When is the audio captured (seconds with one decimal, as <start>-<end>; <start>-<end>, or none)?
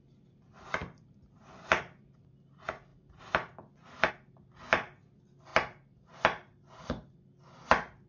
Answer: 0.0-0.8; 1.8-8.1